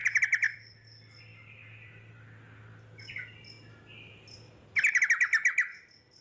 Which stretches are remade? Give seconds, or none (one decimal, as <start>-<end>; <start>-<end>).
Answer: 0.0-0.5

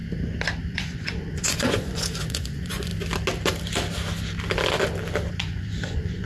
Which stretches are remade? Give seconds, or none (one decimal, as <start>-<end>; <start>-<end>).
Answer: 0.7-2.9; 5.3-6.3

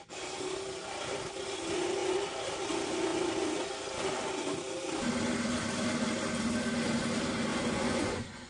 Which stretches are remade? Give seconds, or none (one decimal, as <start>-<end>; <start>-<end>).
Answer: 7.5-8.5

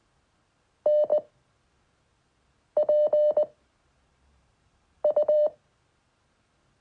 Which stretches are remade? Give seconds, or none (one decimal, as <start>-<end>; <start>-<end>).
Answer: 4.1-5.6

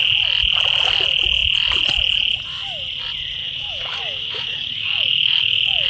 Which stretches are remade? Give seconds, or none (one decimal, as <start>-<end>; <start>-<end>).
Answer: 3.4-5.9